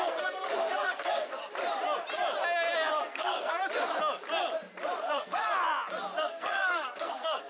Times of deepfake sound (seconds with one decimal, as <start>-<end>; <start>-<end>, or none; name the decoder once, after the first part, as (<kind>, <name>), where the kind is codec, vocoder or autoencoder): 0.0-1.4 (codec, SNAC); 2.9-3.6; 5.0-5.5; 6.2-7.5